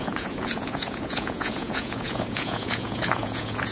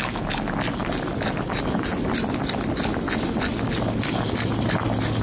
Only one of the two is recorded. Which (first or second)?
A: second